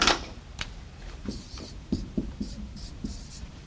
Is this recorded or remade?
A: remade